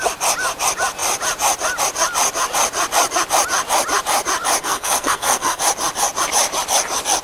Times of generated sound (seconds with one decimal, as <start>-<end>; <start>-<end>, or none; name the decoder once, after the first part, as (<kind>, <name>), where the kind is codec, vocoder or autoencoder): 4.6-5.6 (codec, SNAC)